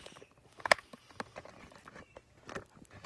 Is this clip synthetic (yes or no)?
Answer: no